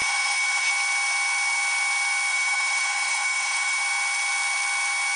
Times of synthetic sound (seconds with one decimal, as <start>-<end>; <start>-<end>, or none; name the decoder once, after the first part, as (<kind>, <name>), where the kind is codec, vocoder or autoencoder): 0.0-0.7 (autoencoder, DAC-VAE); 2.3-3.8